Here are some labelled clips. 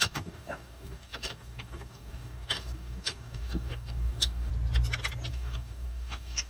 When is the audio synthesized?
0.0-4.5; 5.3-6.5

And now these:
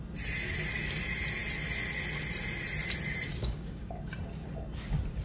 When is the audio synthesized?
3.4-4.0

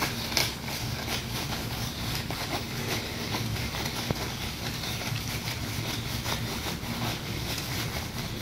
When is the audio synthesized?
0.4-5.3; 7.1-7.7

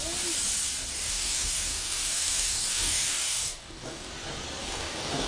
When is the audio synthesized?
0.9-4.1; 4.6-5.3